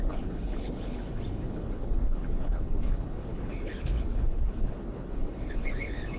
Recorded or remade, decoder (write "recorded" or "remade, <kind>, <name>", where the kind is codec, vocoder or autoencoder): remade, codec, HILCodec